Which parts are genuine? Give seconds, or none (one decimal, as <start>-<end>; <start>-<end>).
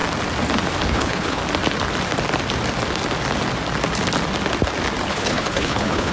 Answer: 0.0-0.9; 1.4-5.1